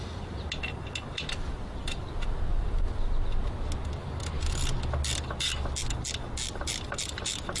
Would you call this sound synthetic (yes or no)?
no